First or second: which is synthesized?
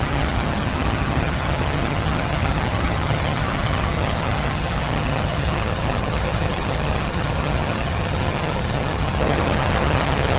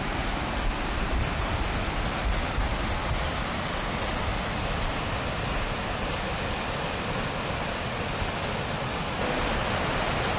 first